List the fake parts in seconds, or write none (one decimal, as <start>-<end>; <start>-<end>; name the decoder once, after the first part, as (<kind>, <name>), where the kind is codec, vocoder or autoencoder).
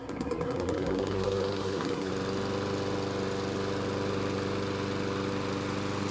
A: 0.0-2.1 (codec, SNAC)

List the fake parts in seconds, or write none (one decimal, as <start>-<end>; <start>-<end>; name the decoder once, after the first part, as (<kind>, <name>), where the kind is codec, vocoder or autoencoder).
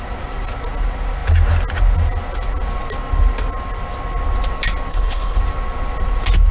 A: 4.9-5.4 (codec, HILCodec)